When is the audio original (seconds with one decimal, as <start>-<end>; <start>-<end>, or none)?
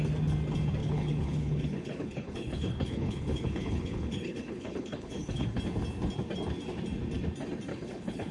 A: 0.0-0.8; 5.6-7.7